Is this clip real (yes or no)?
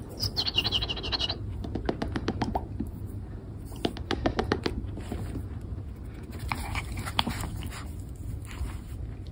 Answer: yes